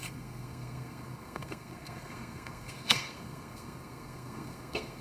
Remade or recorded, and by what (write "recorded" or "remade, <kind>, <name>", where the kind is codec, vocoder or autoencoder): remade, codec, SNAC